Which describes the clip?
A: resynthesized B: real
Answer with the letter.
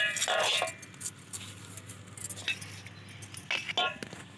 B